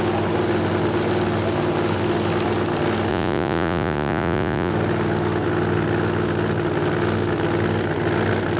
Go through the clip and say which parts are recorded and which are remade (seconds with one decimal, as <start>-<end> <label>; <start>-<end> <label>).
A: 0.0-3.1 recorded; 3.1-4.7 remade; 4.7-8.6 recorded

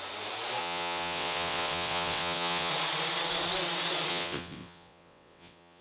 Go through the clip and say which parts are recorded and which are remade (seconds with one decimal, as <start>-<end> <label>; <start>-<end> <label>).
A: 0.0-0.6 recorded; 0.6-2.7 remade; 2.7-4.1 recorded; 4.1-5.8 remade

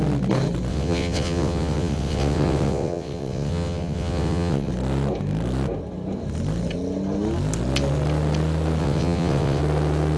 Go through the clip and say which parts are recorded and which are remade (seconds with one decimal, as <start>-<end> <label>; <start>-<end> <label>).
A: 0.0-0.7 recorded; 0.7-4.7 remade; 4.7-8.8 recorded; 8.8-9.6 remade; 9.6-10.2 recorded

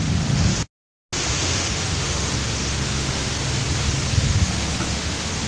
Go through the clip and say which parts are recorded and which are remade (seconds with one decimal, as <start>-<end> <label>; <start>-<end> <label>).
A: 0.0-0.5 remade; 0.5-1.3 recorded; 1.3-3.4 remade; 3.4-4.1 recorded; 4.1-5.5 remade

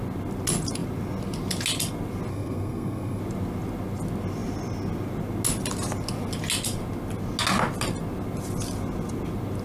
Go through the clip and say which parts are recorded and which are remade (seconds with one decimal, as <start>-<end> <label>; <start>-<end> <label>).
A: 0.0-2.3 recorded; 2.3-3.2 remade; 3.2-9.6 recorded

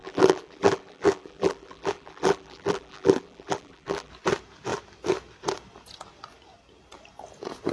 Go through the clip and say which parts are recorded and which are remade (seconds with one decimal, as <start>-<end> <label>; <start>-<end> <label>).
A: 0.0-4.1 remade; 4.1-7.7 recorded

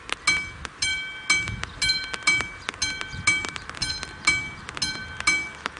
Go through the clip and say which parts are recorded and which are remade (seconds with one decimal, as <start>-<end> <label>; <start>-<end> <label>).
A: 0.0-5.8 recorded

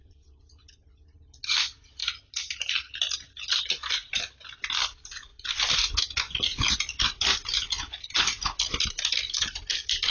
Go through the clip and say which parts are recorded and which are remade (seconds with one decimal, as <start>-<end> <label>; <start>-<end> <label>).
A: 0.0-10.1 recorded